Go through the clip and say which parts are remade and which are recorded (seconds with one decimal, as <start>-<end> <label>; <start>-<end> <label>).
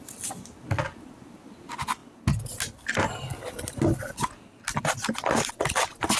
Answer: 0.0-6.2 recorded